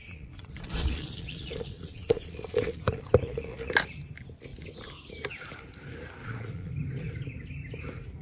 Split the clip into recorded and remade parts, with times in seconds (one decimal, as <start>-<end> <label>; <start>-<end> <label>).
0.0-3.7 remade; 3.7-6.2 recorded; 6.2-6.7 remade; 6.7-8.2 recorded